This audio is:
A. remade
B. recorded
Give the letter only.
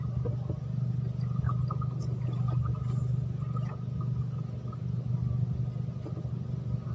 B